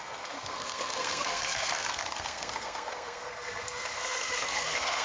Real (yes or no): no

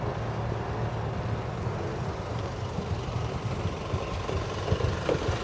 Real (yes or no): yes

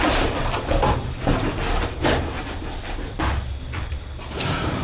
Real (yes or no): yes